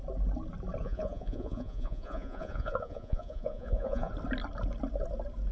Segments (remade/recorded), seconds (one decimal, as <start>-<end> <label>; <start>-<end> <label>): 0.0-0.8 recorded; 0.8-4.1 remade; 4.1-5.5 recorded